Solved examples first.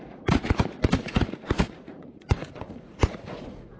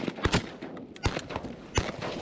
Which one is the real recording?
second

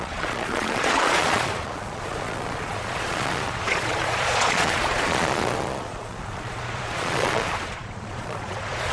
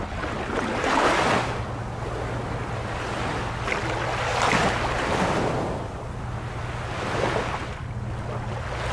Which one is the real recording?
second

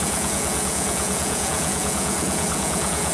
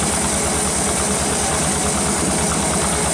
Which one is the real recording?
second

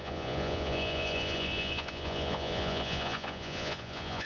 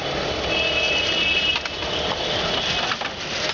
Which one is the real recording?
second